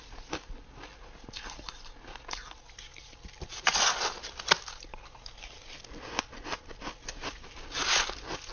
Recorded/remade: recorded